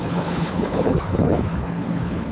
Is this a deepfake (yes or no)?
yes